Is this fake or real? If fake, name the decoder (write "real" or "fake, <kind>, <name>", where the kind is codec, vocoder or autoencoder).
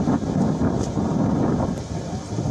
real